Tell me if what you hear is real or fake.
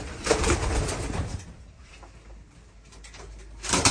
real